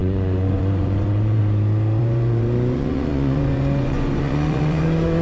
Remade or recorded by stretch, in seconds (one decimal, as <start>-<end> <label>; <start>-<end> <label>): 0.0-1.4 remade; 1.4-2.0 recorded; 2.0-5.2 remade